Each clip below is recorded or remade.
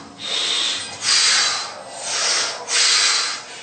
recorded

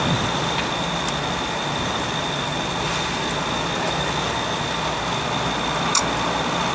recorded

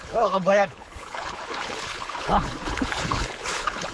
remade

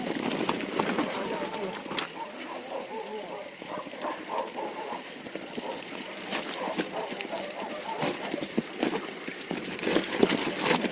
remade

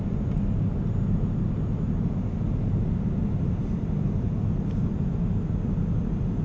recorded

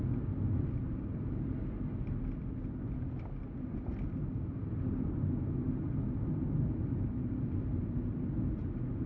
recorded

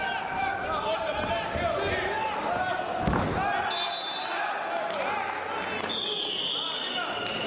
recorded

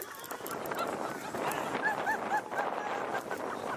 recorded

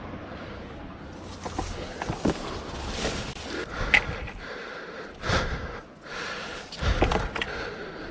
recorded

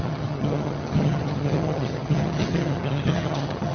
remade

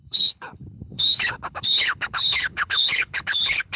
remade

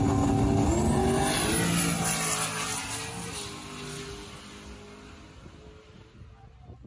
recorded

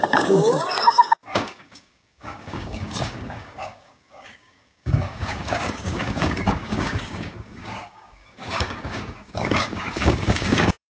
remade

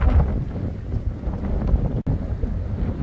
recorded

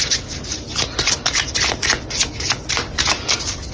recorded